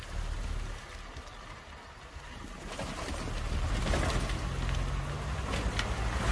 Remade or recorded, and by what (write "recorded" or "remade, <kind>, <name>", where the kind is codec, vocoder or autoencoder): recorded